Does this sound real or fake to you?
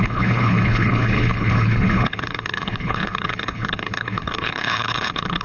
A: fake